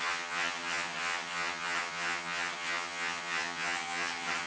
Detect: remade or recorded remade